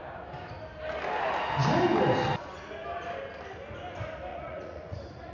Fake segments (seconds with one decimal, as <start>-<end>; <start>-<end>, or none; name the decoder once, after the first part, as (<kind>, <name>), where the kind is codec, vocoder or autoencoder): 4.3-5.3 (vocoder, Vocos)

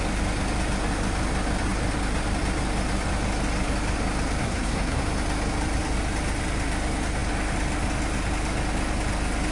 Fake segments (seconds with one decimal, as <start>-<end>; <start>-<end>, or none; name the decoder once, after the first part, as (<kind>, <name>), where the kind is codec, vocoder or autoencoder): 4.4-5.0 (codec, SNAC)

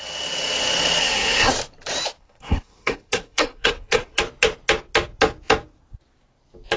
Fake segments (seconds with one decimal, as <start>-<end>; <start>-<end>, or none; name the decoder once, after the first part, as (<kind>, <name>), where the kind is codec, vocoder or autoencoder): 1.0-1.5 (codec, SNAC); 2.2-4.2

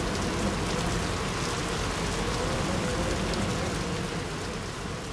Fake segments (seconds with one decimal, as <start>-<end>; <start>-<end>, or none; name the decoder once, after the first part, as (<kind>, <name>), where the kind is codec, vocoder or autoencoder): none